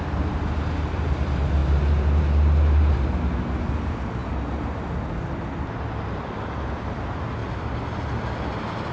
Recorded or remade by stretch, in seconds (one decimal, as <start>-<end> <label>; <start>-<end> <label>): 0.0-8.9 recorded